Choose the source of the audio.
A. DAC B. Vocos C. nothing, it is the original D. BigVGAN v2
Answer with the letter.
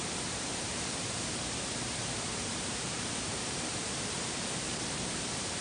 D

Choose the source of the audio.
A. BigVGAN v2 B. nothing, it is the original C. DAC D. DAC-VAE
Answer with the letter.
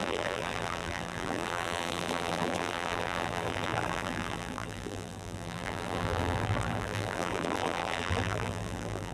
A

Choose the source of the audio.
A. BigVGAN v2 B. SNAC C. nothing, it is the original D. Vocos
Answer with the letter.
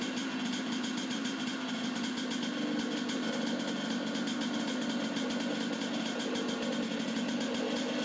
C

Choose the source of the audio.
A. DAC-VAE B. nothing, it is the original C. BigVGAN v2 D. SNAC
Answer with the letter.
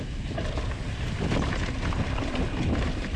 B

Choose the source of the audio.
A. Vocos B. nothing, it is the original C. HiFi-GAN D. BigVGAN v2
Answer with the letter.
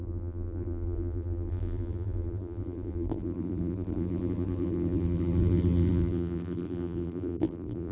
D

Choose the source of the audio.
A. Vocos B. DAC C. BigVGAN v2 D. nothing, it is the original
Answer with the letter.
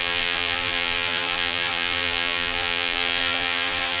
C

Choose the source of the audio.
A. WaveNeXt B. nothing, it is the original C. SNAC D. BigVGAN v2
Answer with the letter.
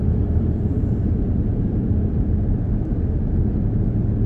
D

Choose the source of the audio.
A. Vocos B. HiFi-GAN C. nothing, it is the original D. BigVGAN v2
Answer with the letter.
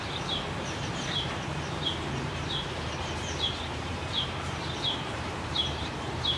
D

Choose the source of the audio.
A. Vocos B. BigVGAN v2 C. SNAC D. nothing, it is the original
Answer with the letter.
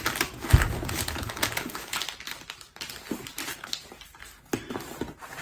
D